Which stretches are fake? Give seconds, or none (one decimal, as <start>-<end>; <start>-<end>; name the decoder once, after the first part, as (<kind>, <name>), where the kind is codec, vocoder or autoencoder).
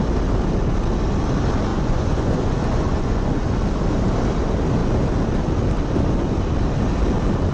1.7-3.5 (vocoder, Vocos)